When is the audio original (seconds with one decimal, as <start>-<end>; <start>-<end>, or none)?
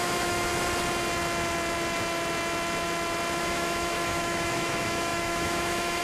0.5-3.4